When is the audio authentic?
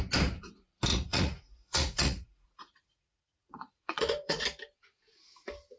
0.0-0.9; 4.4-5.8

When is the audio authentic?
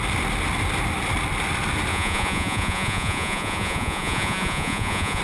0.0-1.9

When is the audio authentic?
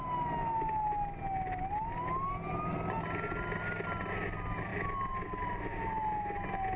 0.0-6.8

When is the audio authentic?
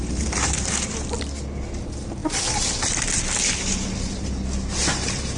0.0-5.4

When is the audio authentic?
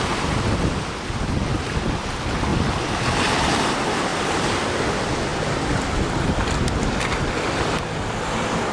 0.0-8.7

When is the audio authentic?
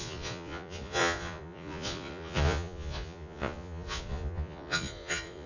none